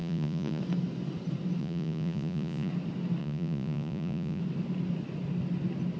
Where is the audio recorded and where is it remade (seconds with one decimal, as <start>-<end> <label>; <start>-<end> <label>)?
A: 0.0-0.6 remade; 0.6-1.6 recorded; 1.6-2.7 remade; 2.7-3.2 recorded; 3.2-4.4 remade; 4.4-6.0 recorded